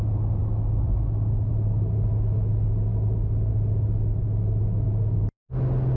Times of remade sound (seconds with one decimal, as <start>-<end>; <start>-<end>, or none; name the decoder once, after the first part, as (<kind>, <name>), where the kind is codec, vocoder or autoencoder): none